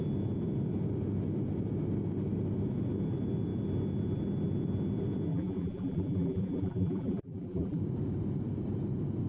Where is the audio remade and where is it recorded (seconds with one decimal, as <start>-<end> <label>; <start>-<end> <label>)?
0.0-5.3 recorded; 5.3-7.8 remade; 7.8-9.3 recorded

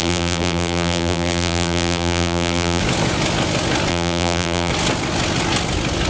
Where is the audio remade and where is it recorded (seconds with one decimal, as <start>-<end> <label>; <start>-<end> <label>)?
0.0-2.8 remade; 2.8-3.9 recorded; 3.9-4.7 remade; 4.7-6.1 recorded

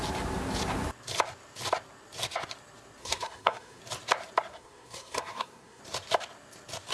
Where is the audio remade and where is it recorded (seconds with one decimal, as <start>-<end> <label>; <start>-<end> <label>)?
0.0-3.0 recorded; 3.0-3.8 remade; 3.8-4.5 recorded; 4.5-5.8 remade; 5.8-6.9 recorded

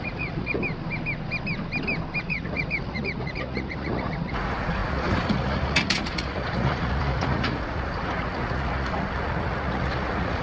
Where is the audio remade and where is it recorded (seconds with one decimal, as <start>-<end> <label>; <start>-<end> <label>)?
0.0-0.6 remade; 0.6-2.2 recorded; 2.2-10.4 remade

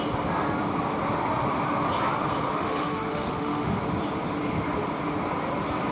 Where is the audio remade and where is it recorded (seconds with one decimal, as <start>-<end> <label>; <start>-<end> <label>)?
0.0-2.5 recorded; 2.5-3.8 remade; 3.8-5.9 recorded

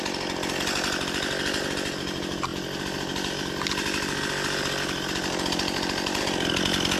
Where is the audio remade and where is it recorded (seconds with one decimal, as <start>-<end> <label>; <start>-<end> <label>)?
0.0-7.0 recorded

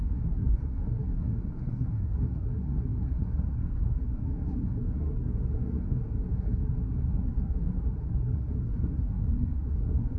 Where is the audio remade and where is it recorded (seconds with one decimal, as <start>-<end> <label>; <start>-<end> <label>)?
0.0-10.2 remade

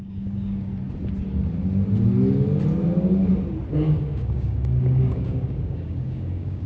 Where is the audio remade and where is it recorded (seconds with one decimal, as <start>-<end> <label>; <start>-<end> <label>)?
0.0-0.7 remade; 0.7-3.7 recorded; 3.7-6.7 remade